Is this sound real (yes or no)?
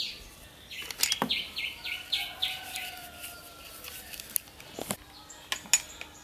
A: yes